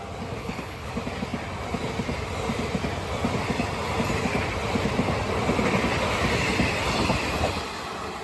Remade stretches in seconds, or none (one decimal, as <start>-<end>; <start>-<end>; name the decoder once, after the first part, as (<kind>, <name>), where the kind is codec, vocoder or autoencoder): 0.4-0.9 (codec, HILCodec)